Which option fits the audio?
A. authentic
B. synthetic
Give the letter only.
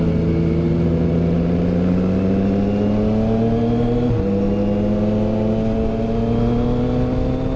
A